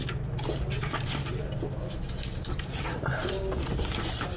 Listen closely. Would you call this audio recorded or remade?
recorded